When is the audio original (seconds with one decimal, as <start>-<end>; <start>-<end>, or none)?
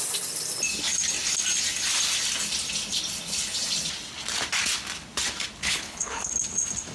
0.0-5.6; 6.3-6.9